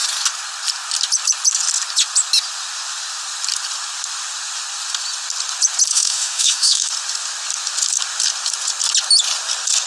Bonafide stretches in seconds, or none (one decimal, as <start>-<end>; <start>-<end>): 0.0-5.9; 6.9-9.9